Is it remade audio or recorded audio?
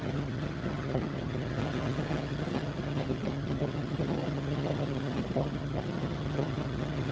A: remade